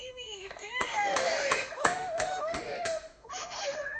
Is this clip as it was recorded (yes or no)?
no